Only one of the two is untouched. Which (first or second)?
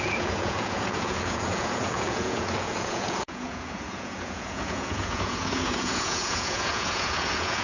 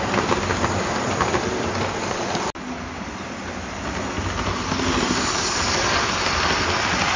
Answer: second